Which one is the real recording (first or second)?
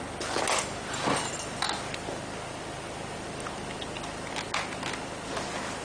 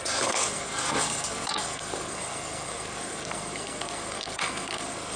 first